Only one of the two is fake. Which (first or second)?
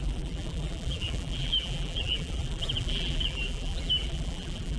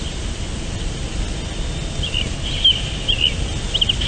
first